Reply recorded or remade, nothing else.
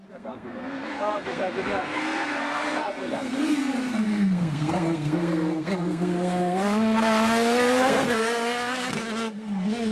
remade